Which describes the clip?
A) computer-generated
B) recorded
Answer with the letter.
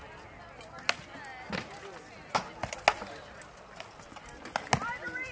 B